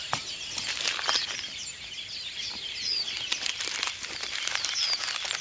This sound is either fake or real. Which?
real